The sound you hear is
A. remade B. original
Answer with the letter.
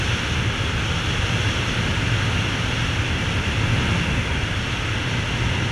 B